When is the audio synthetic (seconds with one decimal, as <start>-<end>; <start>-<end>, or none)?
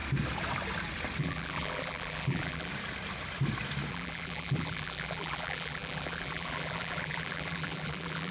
1.2-2.7; 3.9-8.3